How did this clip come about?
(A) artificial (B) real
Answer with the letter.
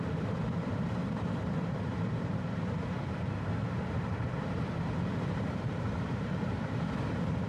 A